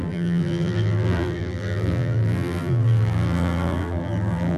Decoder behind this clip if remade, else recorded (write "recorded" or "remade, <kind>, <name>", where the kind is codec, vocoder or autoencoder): remade, vocoder, BigVGAN v2